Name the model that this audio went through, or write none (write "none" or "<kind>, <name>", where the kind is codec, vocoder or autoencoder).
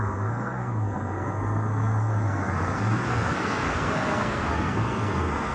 codec, SNAC